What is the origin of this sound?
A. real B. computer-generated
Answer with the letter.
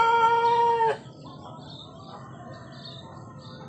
A